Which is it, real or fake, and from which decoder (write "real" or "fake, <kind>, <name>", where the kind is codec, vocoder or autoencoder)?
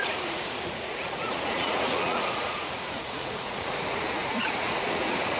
fake, vocoder, Vocos